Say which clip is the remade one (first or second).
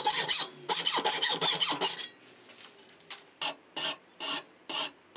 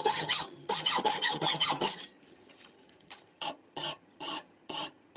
second